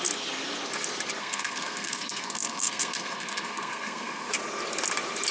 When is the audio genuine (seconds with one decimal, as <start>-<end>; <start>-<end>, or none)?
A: 0.0-1.2; 4.3-5.3